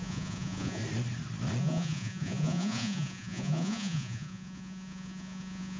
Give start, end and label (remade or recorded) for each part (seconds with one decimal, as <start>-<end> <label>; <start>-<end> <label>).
0.0-0.8 remade; 0.8-1.6 recorded; 1.6-5.8 remade